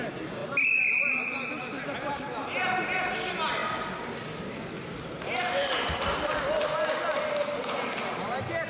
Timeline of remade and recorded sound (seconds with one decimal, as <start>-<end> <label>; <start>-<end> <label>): 0.0-8.7 recorded